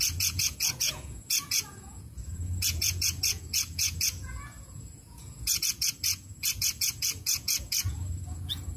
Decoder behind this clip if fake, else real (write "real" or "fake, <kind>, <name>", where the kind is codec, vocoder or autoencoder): fake, vocoder, Vocos